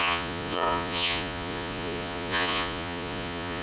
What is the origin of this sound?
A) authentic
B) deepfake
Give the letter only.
B